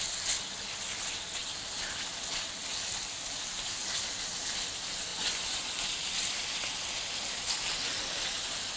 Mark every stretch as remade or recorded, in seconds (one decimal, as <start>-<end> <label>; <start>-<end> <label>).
0.0-5.1 recorded; 5.1-5.7 remade; 5.7-8.8 recorded